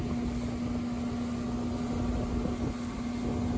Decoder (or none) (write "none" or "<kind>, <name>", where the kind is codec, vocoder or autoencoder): none